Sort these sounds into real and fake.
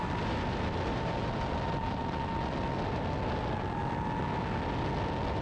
real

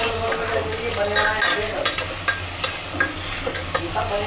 real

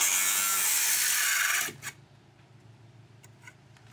real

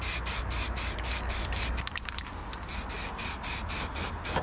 real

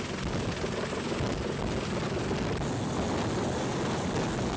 real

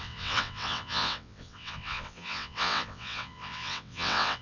fake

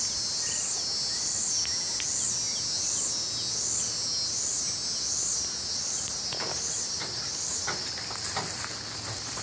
real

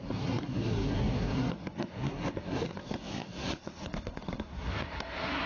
fake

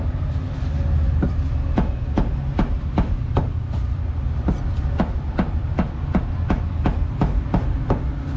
real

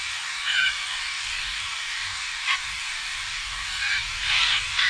fake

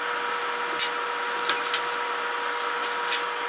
real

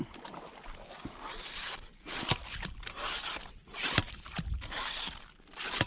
real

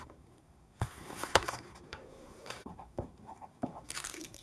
fake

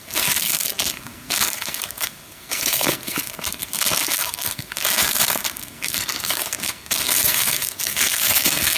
fake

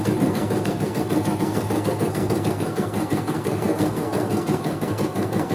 fake